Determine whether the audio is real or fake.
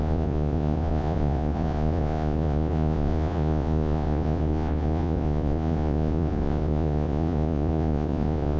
fake